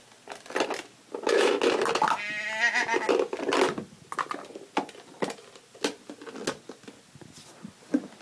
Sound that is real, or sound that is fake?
real